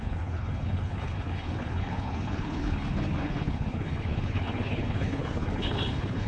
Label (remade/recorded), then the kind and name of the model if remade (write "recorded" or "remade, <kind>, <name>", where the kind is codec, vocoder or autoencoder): remade, codec, HILCodec